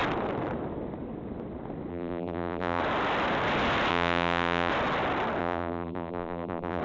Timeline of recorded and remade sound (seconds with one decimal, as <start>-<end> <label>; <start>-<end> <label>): 0.0-1.9 recorded; 1.9-2.8 remade; 2.8-3.9 recorded; 3.9-4.7 remade; 4.7-5.4 recorded; 5.4-6.8 remade